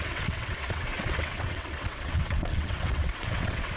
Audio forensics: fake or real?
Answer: fake